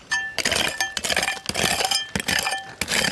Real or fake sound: real